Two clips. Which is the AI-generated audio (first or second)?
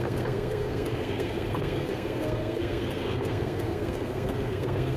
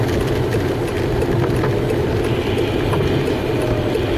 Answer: first